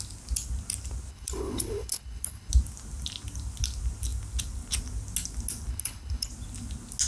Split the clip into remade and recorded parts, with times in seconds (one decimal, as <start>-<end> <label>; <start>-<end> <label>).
0.0-1.1 recorded; 1.1-2.5 remade; 2.5-5.7 recorded; 5.7-6.3 remade; 6.3-7.1 recorded